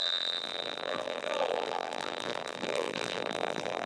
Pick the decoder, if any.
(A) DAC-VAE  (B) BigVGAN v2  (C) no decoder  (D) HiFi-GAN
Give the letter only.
B